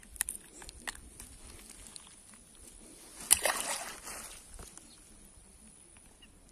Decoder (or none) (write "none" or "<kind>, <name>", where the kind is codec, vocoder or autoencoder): none